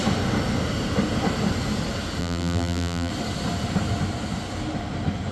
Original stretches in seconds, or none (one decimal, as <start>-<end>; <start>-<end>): 0.0-2.2; 3.1-5.3

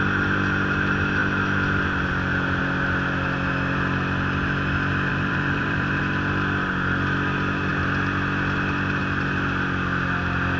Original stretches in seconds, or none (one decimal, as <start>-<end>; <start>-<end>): 0.0-5.1; 6.0-10.6